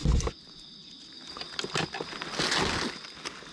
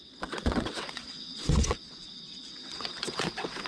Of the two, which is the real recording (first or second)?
first